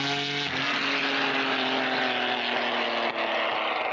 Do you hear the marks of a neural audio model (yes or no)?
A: no